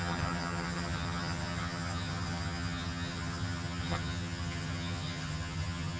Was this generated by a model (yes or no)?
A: yes